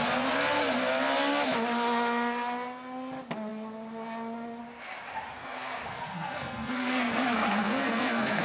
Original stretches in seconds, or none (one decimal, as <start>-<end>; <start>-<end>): 0.0-5.4